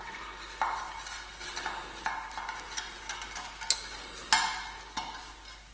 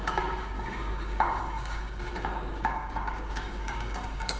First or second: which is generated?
second